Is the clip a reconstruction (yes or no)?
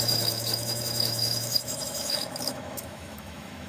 yes